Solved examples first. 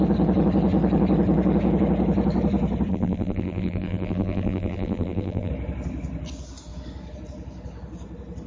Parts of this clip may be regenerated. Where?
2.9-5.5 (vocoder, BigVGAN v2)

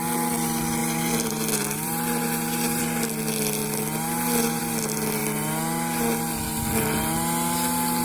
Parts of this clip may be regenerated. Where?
0.8-2.8 (vocoder, BigVGAN v2)

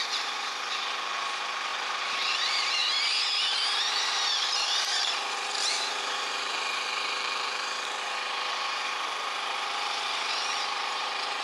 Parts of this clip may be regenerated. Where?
0.0-11.4 (vocoder, BigVGAN v2)

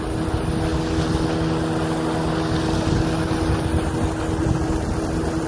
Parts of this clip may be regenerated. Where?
none

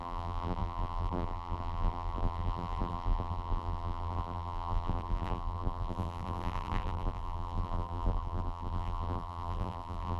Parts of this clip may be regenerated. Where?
0.0-10.2 (vocoder, BigVGAN v2)